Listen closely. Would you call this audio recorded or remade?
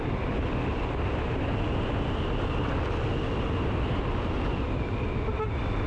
recorded